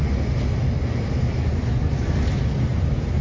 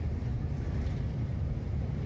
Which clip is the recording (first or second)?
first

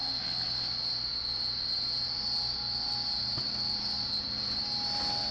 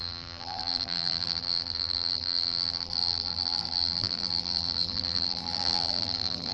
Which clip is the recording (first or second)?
first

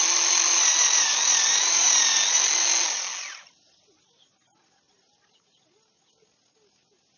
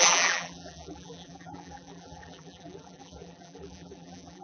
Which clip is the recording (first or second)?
first